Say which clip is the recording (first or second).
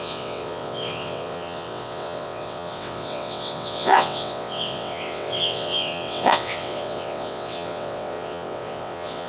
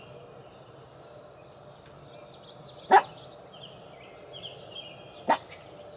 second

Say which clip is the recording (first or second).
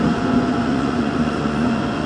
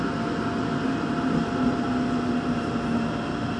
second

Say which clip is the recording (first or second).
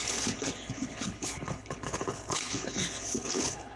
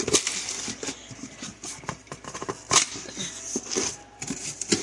second